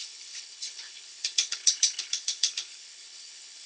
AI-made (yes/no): yes